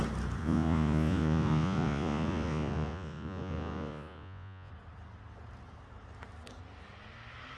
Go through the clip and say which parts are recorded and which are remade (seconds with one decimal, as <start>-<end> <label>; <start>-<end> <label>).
0.0-0.4 recorded; 0.4-4.7 remade; 4.7-7.6 recorded